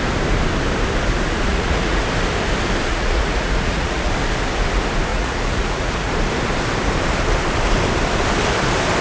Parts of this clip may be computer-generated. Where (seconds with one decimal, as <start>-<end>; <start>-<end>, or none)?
1.5-2.0; 2.9-4.1; 5.1-6.1